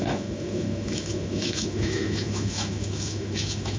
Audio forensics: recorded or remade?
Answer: remade